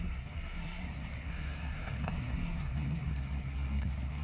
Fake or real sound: fake